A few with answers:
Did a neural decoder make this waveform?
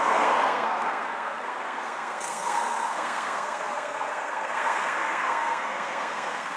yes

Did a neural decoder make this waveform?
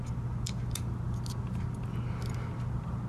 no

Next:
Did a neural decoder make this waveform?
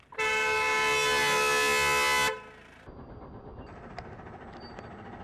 no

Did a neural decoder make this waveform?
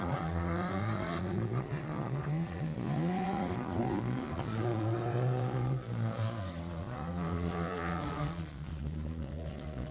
yes